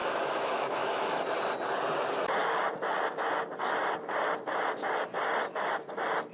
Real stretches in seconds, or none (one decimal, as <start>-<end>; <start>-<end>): 1.2-6.3